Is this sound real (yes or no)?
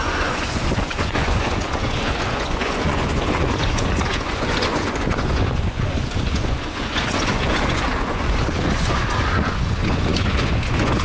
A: no